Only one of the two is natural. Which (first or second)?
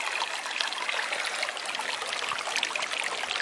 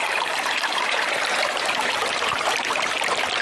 first